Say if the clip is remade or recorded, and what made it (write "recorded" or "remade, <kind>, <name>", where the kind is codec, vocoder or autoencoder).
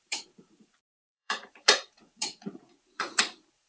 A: remade, vocoder, Vocos